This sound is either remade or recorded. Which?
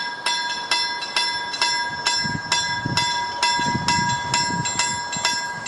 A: recorded